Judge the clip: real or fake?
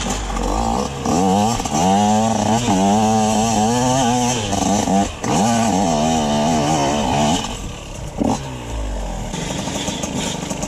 real